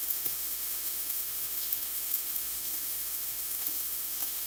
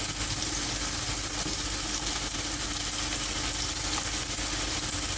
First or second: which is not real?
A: first